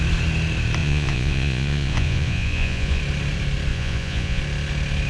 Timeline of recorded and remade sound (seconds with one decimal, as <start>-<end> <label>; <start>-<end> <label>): 0.0-0.8 recorded; 0.8-3.0 remade; 3.0-3.7 recorded; 3.7-4.4 remade; 4.4-5.1 recorded